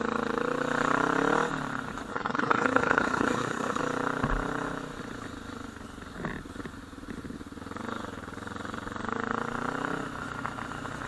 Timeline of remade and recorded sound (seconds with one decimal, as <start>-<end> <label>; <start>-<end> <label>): 0.0-2.1 recorded; 2.1-3.8 remade; 3.8-11.1 recorded